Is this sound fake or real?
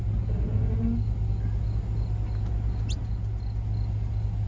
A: real